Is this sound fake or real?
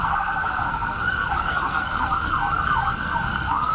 fake